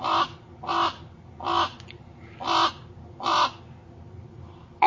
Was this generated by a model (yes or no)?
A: no